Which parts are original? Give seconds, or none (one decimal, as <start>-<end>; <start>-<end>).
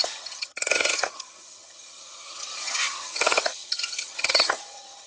none